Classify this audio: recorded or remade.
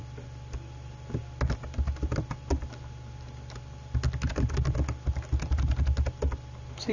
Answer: recorded